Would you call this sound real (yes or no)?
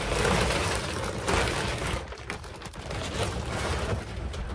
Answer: no